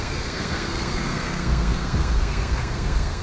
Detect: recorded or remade remade